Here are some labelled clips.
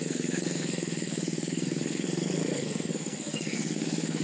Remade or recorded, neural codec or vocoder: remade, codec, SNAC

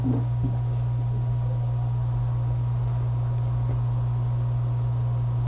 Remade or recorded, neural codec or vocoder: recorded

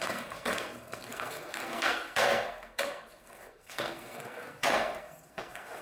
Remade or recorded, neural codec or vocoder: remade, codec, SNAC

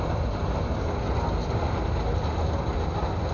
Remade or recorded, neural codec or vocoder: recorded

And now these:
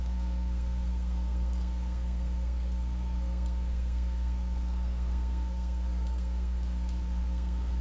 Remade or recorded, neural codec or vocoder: remade, codec, SNAC